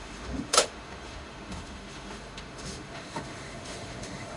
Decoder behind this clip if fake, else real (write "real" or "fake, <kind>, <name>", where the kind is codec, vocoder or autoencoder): fake, autoencoder, DAC-VAE